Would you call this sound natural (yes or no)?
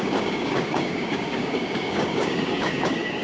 no